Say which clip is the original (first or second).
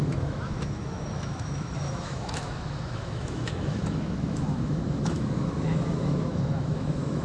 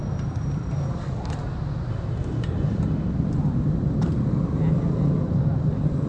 second